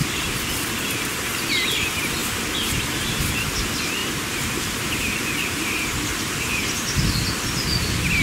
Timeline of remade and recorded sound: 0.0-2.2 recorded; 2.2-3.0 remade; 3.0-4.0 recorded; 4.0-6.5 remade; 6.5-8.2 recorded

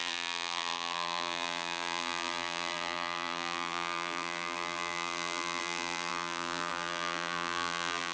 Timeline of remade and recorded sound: 0.0-8.1 remade